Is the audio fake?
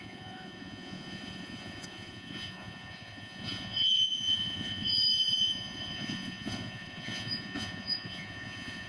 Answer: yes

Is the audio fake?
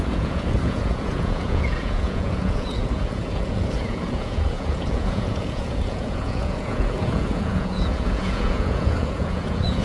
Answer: yes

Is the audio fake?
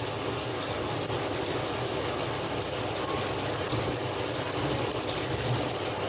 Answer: no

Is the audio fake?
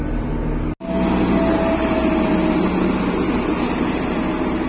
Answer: no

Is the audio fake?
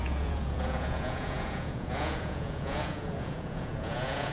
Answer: yes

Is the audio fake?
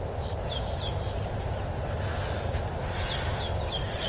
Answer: no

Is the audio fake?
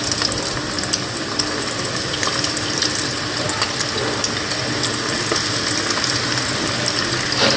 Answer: no